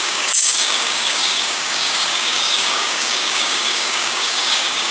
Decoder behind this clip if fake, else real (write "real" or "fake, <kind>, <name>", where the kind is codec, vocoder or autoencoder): fake, codec, DAC